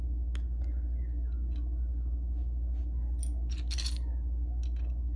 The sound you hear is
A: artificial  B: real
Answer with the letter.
B